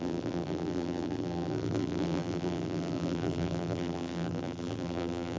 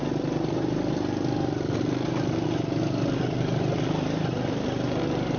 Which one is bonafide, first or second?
second